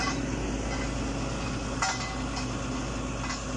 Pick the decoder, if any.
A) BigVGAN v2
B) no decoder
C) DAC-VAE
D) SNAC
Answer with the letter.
B